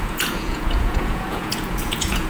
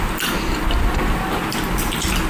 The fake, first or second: first